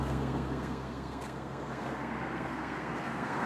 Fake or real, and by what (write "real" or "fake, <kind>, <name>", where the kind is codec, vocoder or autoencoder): fake, codec, SNAC